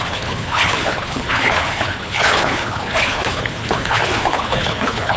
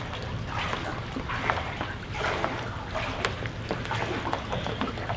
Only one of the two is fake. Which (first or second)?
first